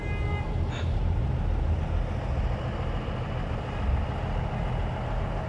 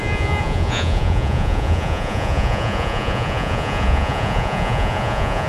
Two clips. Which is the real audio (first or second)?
first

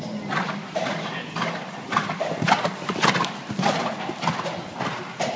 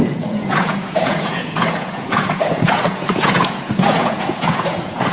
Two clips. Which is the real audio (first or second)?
first